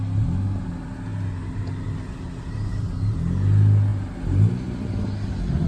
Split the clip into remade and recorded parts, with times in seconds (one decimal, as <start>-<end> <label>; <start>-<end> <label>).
0.0-5.7 recorded